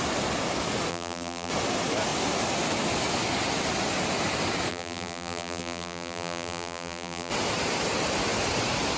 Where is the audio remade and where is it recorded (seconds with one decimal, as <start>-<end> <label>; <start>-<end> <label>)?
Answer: 0.0-0.9 recorded; 0.9-1.5 remade; 1.5-4.7 recorded; 4.7-7.3 remade; 7.3-9.0 recorded